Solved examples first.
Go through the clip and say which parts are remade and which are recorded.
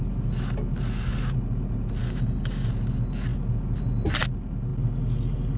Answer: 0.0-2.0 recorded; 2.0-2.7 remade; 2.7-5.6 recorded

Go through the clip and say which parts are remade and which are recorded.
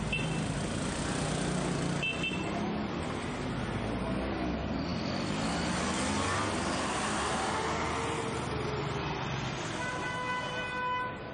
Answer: 0.0-11.3 recorded